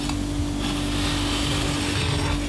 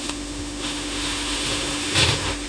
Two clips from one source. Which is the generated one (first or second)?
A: second